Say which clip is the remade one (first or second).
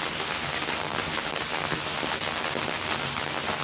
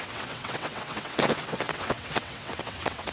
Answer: second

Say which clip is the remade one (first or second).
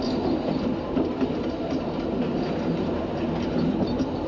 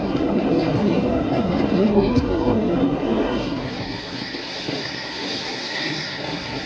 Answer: second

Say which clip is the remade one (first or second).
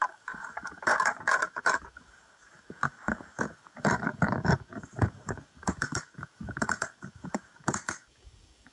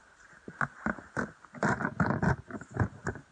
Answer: first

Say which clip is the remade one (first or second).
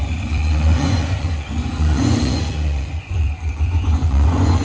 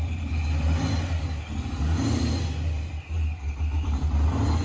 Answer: first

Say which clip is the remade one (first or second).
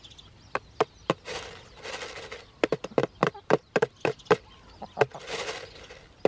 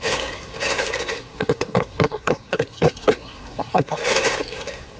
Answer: second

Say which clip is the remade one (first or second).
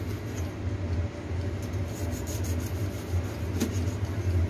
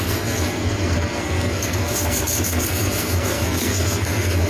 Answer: second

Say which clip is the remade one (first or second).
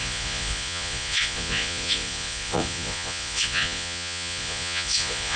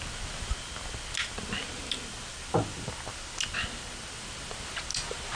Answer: first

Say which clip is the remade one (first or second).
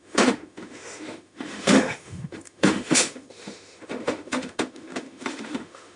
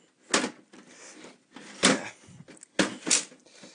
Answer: first